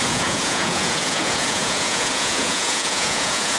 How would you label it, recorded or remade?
remade